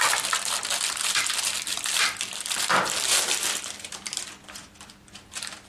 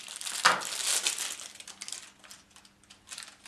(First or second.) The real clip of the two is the second